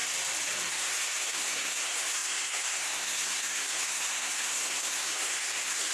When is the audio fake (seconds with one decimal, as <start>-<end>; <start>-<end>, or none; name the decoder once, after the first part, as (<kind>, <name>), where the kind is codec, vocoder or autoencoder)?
0.7-5.9 (codec, SNAC)